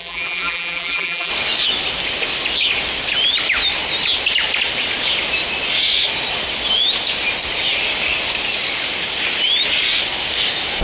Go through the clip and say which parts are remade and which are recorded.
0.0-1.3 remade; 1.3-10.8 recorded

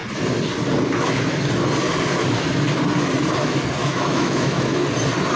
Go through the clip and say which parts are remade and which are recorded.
0.0-3.8 recorded; 3.8-4.8 remade; 4.8-5.4 recorded

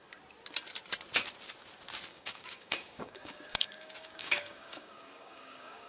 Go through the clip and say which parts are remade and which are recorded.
0.0-2.1 recorded; 2.1-5.9 remade

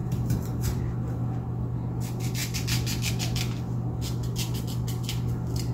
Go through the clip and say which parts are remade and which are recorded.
0.0-0.8 remade; 0.8-5.7 recorded